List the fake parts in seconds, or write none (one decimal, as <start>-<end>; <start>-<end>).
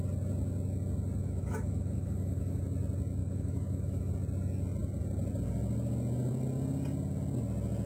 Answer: 1.2-2.6; 3.2-4.1